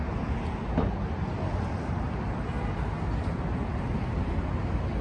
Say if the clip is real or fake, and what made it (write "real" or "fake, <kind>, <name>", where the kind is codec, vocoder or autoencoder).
real